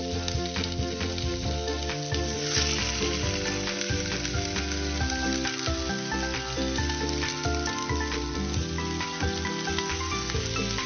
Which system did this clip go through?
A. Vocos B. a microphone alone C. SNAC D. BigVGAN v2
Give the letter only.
B